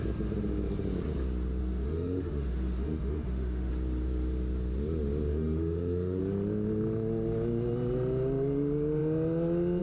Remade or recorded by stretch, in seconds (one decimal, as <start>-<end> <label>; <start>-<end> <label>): 0.0-1.6 recorded; 1.6-3.7 remade; 3.7-5.3 recorded; 5.3-6.2 remade; 6.2-9.8 recorded